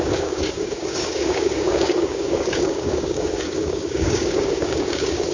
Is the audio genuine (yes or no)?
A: no